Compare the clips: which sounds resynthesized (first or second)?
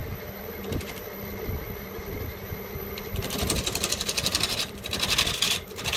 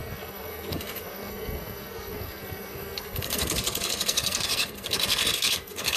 second